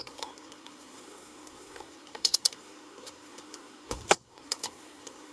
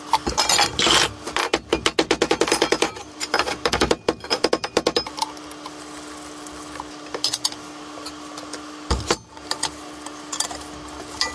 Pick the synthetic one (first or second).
first